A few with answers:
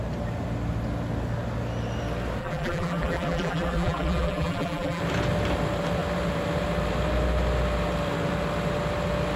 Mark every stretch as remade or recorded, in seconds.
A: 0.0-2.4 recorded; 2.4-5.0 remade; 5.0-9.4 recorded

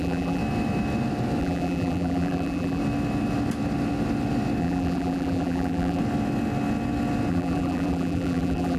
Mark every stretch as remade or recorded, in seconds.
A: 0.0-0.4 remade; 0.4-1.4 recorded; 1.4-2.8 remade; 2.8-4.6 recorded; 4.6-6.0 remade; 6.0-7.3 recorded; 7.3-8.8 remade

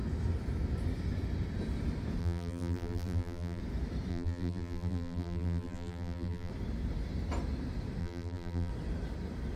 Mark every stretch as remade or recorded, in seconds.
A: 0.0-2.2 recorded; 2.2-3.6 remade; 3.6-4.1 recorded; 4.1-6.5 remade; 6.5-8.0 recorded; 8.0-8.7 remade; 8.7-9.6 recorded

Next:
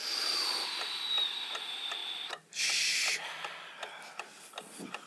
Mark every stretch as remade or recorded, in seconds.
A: 0.0-1.4 recorded; 1.4-2.0 remade; 2.0-5.1 recorded